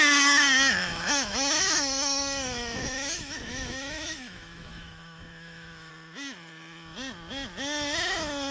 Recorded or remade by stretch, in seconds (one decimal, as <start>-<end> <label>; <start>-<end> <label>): 0.0-0.8 recorded; 0.8-5.9 remade; 5.9-8.5 recorded

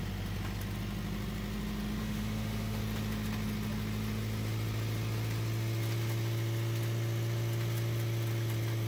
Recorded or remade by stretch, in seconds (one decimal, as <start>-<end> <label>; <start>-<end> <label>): 0.0-2.0 recorded; 2.0-2.8 remade; 2.8-8.9 recorded

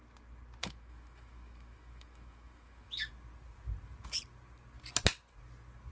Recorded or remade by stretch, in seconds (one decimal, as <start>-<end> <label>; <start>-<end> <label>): 0.0-0.6 recorded; 0.6-3.1 remade; 3.1-5.9 recorded

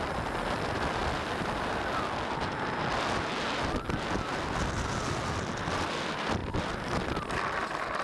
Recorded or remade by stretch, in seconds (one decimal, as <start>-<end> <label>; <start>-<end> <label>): 0.0-8.0 recorded

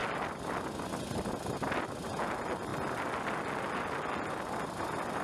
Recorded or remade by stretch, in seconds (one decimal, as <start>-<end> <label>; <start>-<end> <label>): 0.0-5.2 recorded

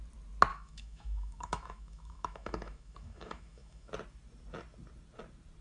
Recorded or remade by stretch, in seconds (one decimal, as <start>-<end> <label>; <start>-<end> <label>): 0.0-0.5 recorded; 0.5-3.9 remade; 3.9-5.6 recorded